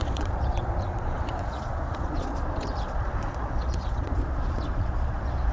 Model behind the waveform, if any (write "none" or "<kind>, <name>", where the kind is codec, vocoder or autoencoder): vocoder, Vocos